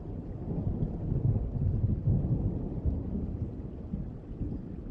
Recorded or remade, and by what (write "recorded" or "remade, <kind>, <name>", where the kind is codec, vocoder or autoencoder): recorded